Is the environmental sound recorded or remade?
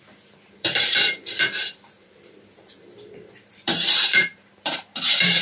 remade